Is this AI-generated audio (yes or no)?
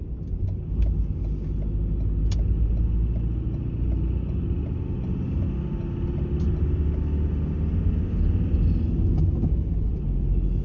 no